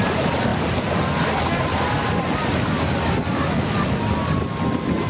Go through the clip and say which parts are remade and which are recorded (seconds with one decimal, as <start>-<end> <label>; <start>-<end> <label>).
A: 0.0-5.1 recorded